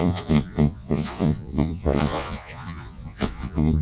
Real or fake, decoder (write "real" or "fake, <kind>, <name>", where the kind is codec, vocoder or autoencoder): fake, vocoder, Vocos